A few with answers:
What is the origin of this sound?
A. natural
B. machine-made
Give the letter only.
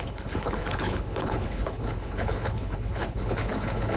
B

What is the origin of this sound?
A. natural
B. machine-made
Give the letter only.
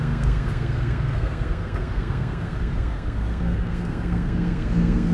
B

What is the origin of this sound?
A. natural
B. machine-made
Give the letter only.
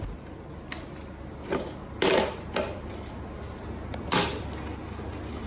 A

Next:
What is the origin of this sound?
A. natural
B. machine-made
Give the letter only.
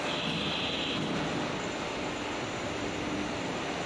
A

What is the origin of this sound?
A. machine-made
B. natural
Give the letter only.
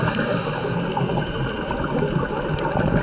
B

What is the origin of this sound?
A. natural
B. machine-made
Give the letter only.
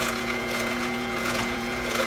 B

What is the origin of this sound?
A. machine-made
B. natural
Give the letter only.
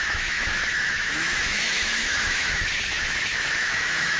A